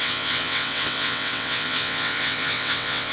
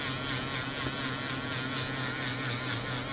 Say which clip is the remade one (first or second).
first